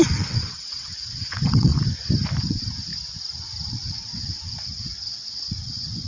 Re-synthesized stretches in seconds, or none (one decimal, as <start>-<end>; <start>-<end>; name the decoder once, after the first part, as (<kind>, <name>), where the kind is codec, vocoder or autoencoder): 0.0-1.7 (vocoder, WaveNeXt); 2.4-2.9; 3.7-6.1